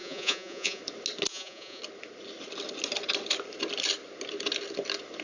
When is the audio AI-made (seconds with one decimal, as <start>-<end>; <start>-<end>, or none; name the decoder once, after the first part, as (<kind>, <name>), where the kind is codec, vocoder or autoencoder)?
0.0-0.8 (vocoder, Vocos); 1.3-1.8